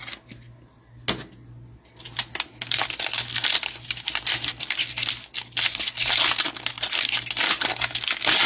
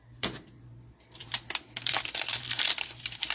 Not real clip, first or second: second